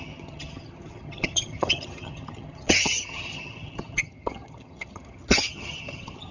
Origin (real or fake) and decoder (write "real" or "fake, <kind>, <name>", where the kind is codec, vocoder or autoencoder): fake, vocoder, HiFi-GAN